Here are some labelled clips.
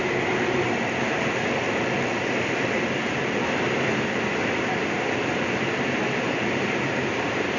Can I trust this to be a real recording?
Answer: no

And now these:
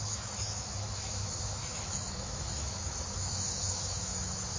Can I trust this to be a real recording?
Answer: no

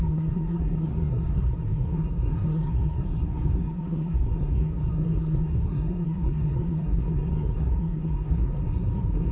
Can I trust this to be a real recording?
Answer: no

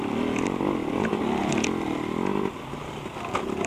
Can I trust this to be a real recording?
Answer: yes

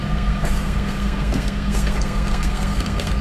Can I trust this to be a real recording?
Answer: no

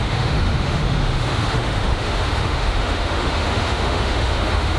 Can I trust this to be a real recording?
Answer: no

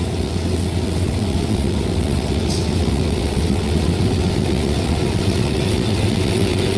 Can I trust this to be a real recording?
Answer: no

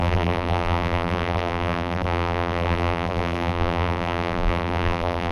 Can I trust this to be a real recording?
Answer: no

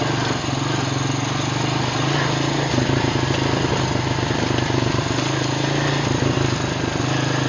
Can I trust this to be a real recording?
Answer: yes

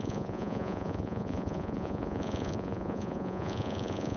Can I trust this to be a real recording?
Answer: no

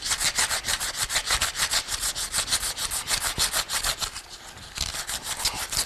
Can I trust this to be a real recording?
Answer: yes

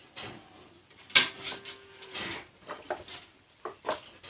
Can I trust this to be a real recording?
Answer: yes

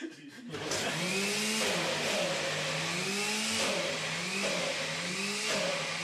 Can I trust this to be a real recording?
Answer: yes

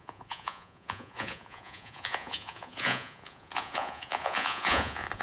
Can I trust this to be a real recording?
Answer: no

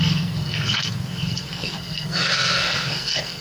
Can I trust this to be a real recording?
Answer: no